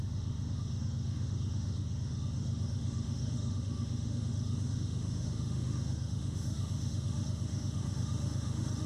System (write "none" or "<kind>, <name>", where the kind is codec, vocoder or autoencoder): autoencoder, DAC-VAE